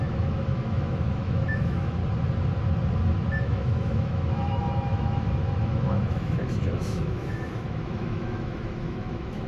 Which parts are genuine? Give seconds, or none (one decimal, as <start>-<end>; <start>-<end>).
2.0-3.4